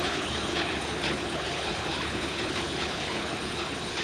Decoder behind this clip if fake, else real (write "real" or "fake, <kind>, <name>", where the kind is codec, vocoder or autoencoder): fake, codec, HILCodec